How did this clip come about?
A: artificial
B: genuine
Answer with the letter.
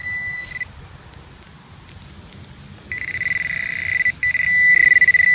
B